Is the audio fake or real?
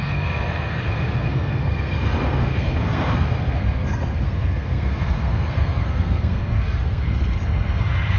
fake